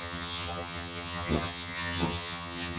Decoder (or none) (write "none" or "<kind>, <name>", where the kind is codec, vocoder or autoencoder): vocoder, HiFi-GAN